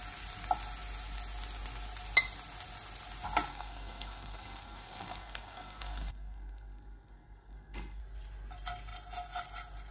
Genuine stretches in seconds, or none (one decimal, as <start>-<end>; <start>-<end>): 0.0-3.5; 8.0-9.9